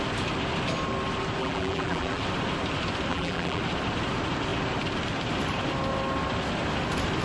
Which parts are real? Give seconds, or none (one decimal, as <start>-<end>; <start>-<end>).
0.0-1.4; 2.2-3.1; 3.6-7.2